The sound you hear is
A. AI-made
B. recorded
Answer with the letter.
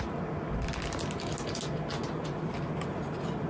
B